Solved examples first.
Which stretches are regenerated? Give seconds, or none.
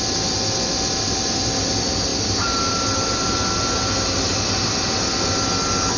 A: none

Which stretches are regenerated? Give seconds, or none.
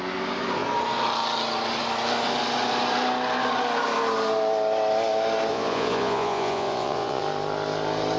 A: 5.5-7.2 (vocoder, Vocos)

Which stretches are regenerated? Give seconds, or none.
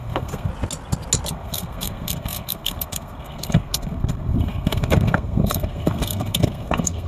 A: 0.0-0.5 (codec, SNAC); 1.3-7.1